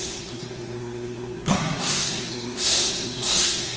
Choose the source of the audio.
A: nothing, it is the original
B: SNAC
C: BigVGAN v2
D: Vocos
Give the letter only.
B